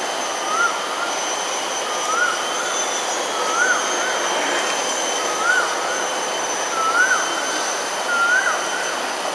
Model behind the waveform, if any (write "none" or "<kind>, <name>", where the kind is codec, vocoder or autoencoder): none